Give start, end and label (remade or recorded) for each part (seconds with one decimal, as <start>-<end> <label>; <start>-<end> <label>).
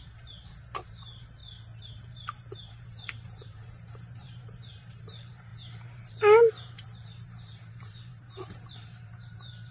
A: 0.0-1.4 remade; 1.4-2.0 recorded; 2.0-9.7 remade